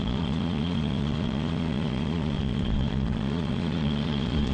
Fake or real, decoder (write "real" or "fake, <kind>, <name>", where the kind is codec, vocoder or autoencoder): fake, vocoder, Vocos